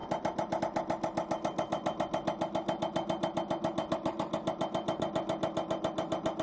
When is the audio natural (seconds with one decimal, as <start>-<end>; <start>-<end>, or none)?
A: 0.0-6.4